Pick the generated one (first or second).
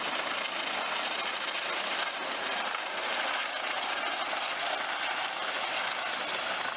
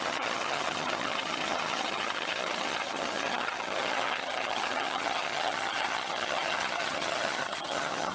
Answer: second